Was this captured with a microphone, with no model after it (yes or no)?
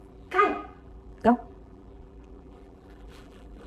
no